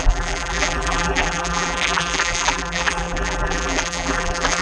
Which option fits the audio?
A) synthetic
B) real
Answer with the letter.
A